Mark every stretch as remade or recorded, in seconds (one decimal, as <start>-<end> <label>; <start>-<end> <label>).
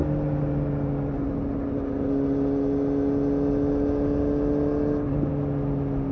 0.0-6.1 recorded